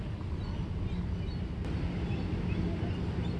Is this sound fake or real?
real